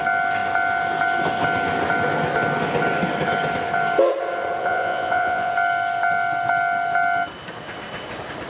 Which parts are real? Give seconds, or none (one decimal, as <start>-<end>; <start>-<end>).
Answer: 0.0-4.6; 5.5-8.5